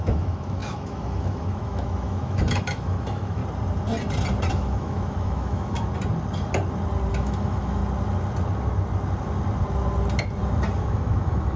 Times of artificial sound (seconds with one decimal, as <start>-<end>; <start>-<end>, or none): 0.0-3.4; 4.5-5.9; 7.1-7.8; 10.8-11.6